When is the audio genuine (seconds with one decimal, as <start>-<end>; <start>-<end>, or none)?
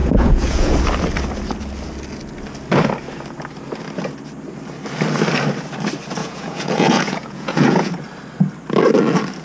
0.8-6.2; 7.9-9.4